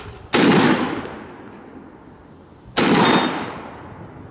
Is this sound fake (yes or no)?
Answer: no